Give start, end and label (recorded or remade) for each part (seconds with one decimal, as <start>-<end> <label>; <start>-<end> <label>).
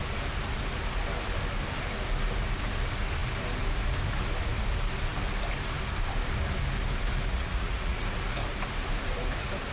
0.0-7.3 recorded; 7.3-8.0 remade; 8.0-9.7 recorded